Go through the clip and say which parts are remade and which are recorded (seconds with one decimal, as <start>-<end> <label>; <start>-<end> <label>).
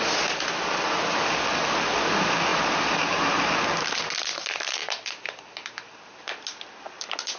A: 0.0-2.5 recorded; 2.5-3.5 remade; 3.5-4.8 recorded; 4.8-6.3 remade; 6.3-7.4 recorded